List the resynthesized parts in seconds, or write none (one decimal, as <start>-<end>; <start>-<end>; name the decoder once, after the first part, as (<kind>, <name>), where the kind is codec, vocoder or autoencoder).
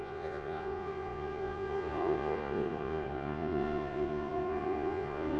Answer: 0.0-5.4 (vocoder, Vocos)